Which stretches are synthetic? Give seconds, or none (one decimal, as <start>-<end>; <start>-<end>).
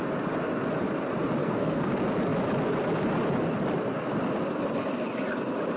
1.4-1.9